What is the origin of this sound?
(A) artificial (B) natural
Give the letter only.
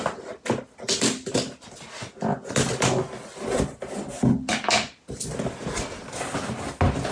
B